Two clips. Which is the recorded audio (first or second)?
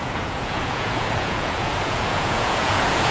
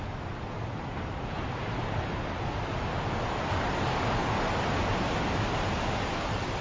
second